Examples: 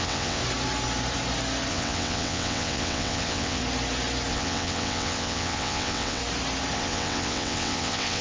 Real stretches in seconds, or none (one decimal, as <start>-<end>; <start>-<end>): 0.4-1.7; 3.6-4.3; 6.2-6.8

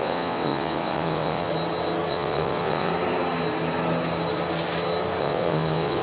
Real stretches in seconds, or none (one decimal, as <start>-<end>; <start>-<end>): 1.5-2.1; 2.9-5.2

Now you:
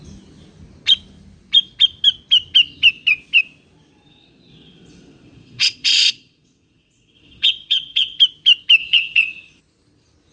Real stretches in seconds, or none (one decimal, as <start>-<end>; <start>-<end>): 0.0-4.1; 8.2-8.8; 9.6-10.3

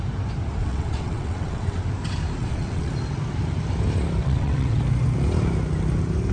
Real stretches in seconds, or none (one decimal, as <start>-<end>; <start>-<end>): 0.0-0.6; 1.8-2.4; 2.9-4.2; 4.8-6.3

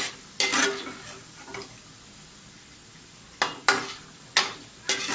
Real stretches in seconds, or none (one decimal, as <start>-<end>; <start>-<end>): 0.0-5.1

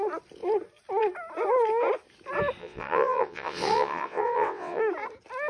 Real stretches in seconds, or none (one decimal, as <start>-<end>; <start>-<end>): 0.0-2.6; 4.8-5.5